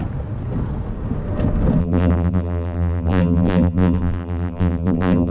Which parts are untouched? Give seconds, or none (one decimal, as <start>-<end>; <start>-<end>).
0.0-1.8